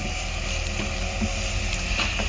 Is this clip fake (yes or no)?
no